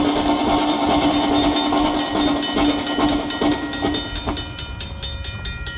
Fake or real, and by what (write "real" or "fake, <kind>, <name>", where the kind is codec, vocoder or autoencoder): real